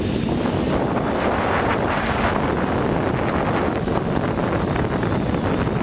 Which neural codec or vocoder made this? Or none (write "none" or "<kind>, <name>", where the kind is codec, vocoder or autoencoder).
none